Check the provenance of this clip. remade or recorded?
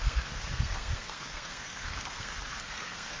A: remade